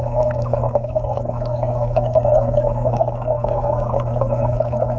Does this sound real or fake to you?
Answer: fake